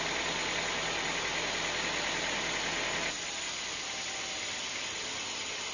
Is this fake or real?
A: real